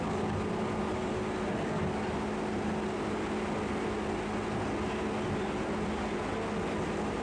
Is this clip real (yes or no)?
yes